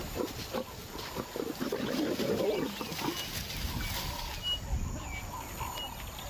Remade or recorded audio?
recorded